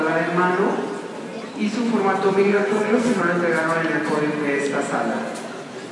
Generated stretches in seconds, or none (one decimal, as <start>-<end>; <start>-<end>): 2.5-3.2